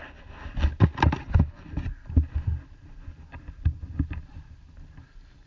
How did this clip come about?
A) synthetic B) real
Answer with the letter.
B